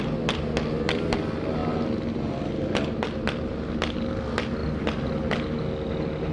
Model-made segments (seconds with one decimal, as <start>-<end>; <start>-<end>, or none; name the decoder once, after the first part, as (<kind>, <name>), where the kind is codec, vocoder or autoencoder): none